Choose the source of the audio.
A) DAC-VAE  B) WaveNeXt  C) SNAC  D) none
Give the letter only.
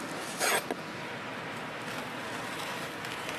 D